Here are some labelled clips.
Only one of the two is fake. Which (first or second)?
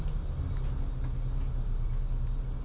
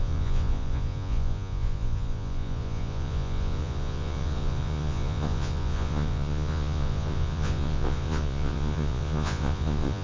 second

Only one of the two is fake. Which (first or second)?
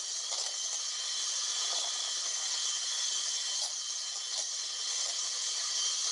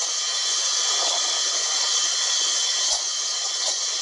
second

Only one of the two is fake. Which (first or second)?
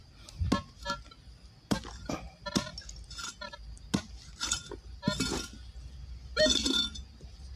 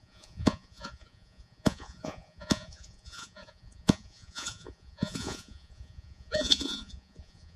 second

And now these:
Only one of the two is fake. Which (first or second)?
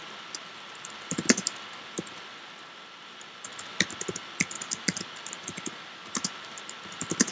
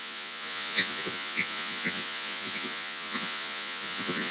second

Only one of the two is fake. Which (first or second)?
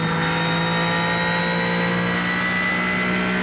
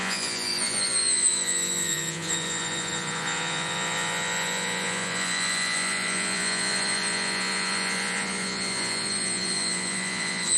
second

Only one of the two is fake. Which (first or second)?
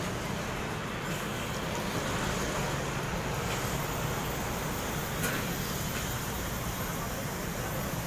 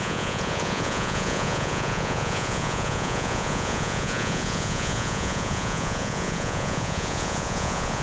second